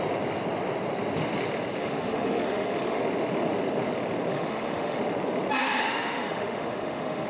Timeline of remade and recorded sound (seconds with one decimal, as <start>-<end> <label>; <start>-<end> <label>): 0.0-1.8 recorded; 1.8-3.0 remade; 3.0-4.3 recorded; 4.3-5.0 remade; 5.0-5.6 recorded; 5.6-7.3 remade